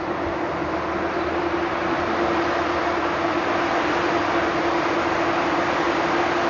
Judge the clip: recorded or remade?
recorded